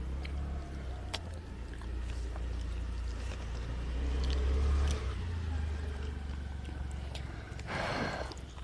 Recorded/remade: recorded